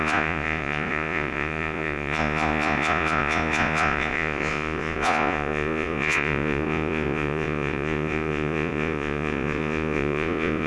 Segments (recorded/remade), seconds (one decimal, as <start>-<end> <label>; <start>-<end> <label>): 0.0-10.7 remade